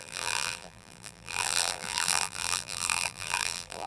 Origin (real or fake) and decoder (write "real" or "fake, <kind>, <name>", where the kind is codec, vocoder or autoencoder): fake, vocoder, BigVGAN v2